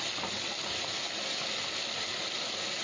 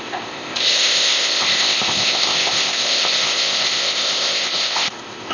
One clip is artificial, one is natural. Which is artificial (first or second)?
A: second